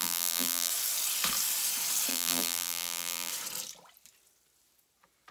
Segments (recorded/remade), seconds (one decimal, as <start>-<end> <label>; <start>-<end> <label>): 0.0-0.7 remade; 0.7-2.1 recorded; 2.1-3.3 remade; 3.3-5.3 recorded